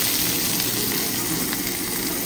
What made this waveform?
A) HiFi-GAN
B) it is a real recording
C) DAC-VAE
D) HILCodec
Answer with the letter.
B